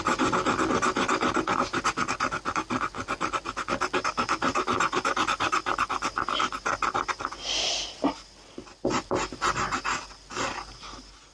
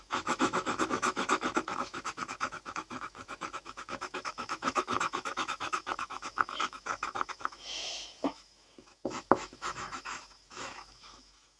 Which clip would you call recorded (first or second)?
first